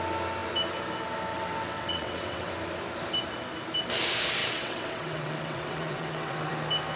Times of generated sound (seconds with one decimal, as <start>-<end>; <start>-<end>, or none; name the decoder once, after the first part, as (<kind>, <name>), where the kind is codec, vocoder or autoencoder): 1.3-2.5 (vocoder, WaveNeXt); 4.4-6.5

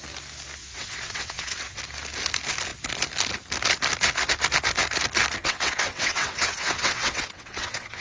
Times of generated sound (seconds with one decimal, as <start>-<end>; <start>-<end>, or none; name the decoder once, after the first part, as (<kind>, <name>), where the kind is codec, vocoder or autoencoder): 0.6-1.8 (vocoder, WaveNeXt); 5.4-8.0

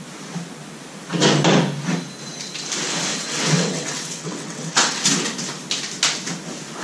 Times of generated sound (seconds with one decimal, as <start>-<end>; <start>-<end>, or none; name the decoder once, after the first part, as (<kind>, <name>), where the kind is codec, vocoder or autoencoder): 3.1-5.1 (vocoder, WaveNeXt)

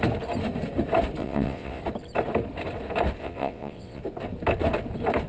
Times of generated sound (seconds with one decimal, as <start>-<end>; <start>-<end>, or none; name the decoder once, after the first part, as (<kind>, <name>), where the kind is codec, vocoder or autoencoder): 1.2-1.8 (vocoder, WaveNeXt); 3.2-4.0

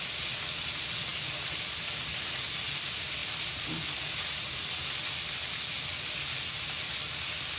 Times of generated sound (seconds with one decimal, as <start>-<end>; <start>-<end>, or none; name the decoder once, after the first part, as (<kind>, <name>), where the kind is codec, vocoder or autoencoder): none

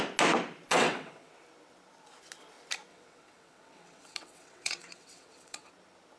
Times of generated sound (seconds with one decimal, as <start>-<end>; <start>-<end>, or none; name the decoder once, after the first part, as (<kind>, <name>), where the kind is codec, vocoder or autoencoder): 0.7-1.3 (vocoder, WaveNeXt); 2.9-5.7